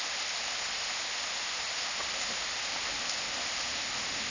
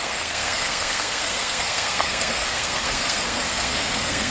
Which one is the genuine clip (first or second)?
first